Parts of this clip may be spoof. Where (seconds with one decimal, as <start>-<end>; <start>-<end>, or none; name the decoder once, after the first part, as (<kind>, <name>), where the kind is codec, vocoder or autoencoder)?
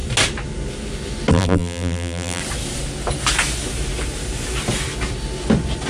1.3-2.4 (vocoder, BigVGAN v2)